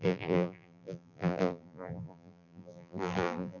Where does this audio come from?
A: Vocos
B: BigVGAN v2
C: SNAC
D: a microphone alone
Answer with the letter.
B